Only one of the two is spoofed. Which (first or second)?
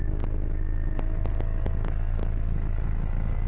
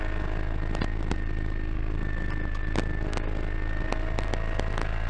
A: first